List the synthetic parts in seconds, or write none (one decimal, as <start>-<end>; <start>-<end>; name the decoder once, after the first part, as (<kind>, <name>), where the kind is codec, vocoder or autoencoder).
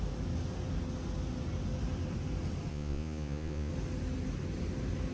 2.7-3.7 (vocoder, Vocos)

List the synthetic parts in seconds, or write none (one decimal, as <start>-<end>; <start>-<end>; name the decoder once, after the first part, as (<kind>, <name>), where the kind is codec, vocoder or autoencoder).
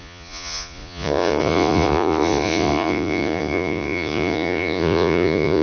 0.0-5.6 (vocoder, Vocos)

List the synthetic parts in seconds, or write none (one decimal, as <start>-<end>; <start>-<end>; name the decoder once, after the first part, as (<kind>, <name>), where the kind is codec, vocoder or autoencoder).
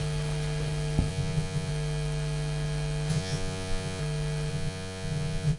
1.1-1.7 (vocoder, Vocos); 3.1-4.0; 4.5-5.6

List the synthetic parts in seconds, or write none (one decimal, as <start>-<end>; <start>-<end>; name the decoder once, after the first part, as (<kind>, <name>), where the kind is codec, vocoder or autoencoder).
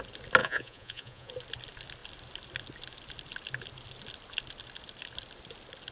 0.4-1.3 (vocoder, Vocos)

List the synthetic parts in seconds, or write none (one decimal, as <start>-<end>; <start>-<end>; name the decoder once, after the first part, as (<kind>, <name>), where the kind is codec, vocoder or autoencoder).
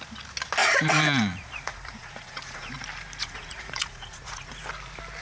0.6-2.7 (vocoder, Vocos); 3.2-4.5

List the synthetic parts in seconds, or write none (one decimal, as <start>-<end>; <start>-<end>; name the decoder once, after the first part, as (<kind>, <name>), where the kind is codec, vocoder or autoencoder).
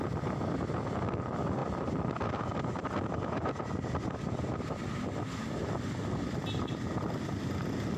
none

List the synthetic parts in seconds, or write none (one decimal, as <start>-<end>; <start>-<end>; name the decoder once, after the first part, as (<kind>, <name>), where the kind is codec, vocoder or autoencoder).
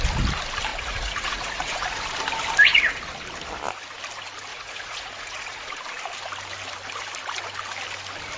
0.7-2.0 (vocoder, Vocos); 4.5-5.8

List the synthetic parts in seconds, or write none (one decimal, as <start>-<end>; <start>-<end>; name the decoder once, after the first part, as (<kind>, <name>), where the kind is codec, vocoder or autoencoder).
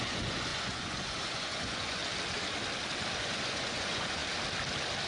0.0-2.0 (vocoder, Vocos); 3.2-4.2